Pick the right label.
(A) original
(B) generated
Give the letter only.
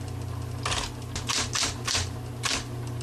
A